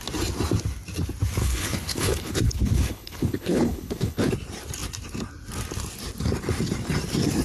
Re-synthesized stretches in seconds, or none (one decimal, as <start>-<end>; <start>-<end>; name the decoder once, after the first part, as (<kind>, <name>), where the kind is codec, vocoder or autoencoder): 1.4-4.3 (codec, HILCodec)